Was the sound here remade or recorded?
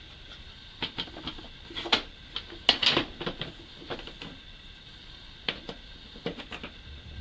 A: recorded